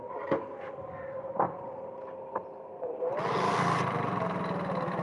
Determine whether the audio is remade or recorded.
recorded